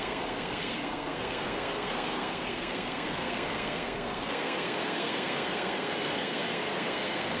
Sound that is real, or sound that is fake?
fake